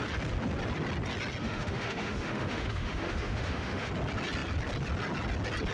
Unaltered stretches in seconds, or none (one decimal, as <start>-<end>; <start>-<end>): 0.0-1.4; 3.9-5.7